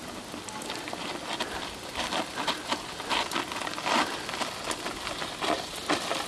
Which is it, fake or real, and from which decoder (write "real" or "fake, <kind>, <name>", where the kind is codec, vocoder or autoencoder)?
real